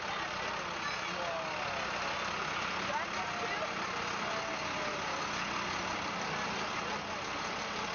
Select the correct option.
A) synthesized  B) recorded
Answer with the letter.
B